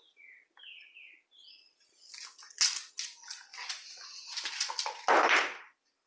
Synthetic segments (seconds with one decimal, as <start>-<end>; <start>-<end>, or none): none